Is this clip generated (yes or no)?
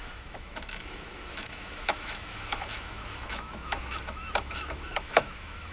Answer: yes